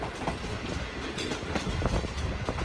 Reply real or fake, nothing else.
real